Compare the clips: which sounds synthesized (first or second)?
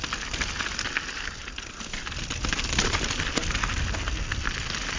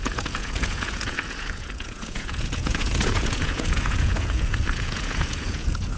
second